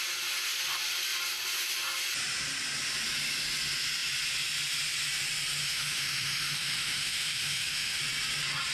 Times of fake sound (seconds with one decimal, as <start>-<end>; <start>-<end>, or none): 5.6-8.0